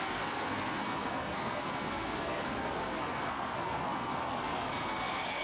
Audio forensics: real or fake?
fake